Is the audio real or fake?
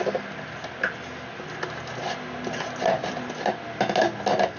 real